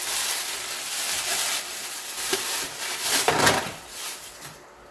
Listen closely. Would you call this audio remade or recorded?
remade